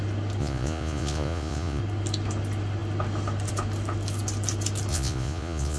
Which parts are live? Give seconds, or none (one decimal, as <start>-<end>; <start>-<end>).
0.0-0.4; 1.8-4.9